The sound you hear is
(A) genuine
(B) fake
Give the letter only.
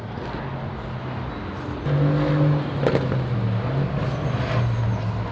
A